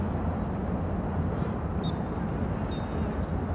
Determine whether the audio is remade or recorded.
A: recorded